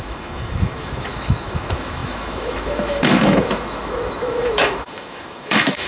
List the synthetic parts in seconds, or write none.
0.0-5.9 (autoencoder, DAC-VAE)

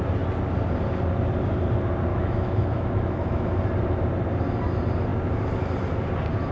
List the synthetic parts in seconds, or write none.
2.1-3.6 (autoencoder, DAC-VAE)

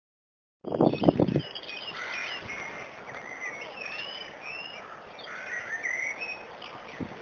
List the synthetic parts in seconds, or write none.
none

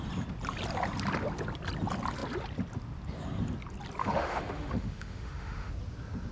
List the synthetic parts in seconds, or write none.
4.0-5.7 (autoencoder, DAC-VAE)